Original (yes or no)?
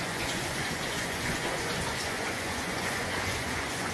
no